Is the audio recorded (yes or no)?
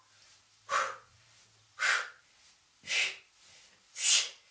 yes